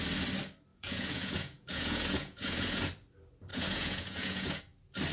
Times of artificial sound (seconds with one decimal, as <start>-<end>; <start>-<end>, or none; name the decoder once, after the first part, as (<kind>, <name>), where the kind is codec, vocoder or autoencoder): 0.7-2.9 (vocoder, Vocos); 3.5-4.6